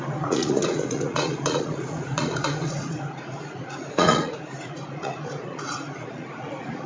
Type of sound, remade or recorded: remade